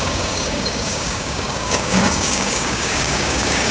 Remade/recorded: remade